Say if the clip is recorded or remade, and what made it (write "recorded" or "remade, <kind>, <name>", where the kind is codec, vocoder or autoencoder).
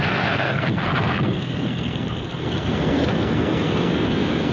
remade, codec, SNAC